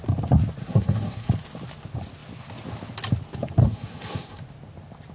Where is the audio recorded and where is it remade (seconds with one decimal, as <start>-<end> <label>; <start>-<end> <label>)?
0.0-0.6 recorded; 0.6-1.3 remade; 1.3-3.6 recorded; 3.6-4.4 remade; 4.4-5.1 recorded